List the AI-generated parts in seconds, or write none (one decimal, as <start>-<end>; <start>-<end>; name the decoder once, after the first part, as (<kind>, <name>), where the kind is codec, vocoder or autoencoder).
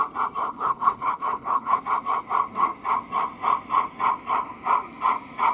0.4-1.8 (codec, HILCodec)